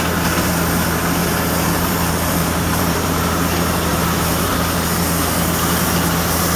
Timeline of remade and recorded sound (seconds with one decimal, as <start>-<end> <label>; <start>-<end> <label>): 0.0-1.2 recorded; 1.2-3.2 remade; 3.2-3.9 recorded; 3.9-4.5 remade; 4.5-6.6 recorded

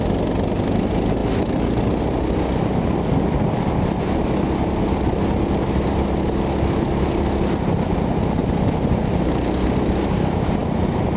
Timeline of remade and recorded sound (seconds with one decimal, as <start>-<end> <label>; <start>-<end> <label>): 0.0-8.4 recorded; 8.4-9.1 remade; 9.1-11.2 recorded

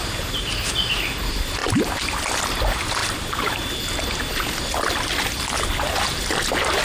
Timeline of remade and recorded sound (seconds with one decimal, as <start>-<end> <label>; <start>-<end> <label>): 0.0-3.0 recorded; 3.0-3.7 remade; 3.7-6.8 recorded

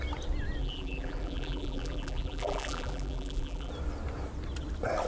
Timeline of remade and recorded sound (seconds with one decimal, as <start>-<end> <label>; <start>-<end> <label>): 0.0-0.6 recorded; 0.6-3.7 remade; 3.7-5.1 recorded

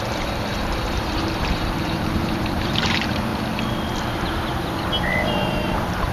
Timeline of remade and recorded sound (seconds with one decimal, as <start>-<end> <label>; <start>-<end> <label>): 0.0-3.3 remade; 3.3-5.3 recorded; 5.3-6.1 remade

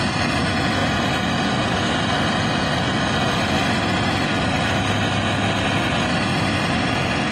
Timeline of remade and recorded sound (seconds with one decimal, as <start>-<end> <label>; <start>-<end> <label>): 0.0-7.3 recorded